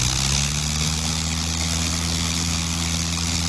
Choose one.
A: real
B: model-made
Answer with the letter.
A